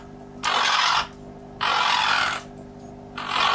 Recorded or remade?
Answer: recorded